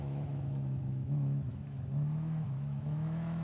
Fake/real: fake